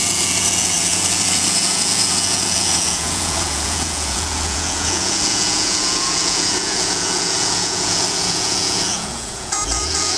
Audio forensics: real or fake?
fake